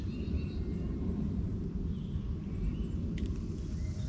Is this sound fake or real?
real